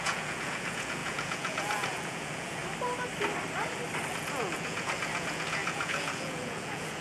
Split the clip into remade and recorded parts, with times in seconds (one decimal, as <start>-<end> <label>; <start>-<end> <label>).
0.0-2.6 remade; 2.6-4.1 recorded; 4.1-7.0 remade